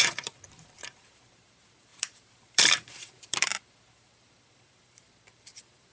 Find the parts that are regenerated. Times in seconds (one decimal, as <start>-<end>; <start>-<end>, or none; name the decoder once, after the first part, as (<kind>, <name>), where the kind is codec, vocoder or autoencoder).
0.0-5.9 (vocoder, BigVGAN v2)